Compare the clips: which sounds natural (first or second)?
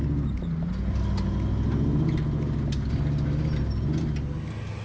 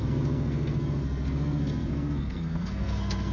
first